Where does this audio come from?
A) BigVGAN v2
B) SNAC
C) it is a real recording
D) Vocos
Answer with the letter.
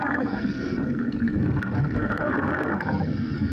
B